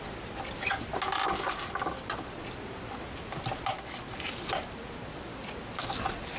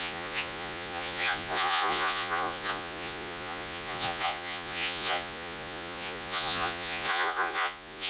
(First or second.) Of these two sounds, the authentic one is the first